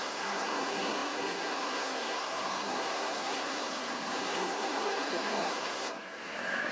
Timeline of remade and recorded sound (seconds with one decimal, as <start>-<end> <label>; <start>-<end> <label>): 0.0-6.7 remade